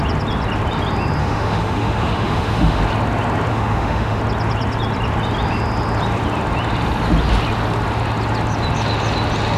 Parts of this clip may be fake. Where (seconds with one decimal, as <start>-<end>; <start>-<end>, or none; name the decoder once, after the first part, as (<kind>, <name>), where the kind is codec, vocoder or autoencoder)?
1.2-2.8 (autoencoder, DAC-VAE); 3.5-4.2